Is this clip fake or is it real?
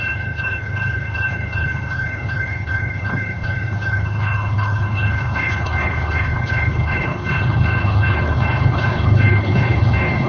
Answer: fake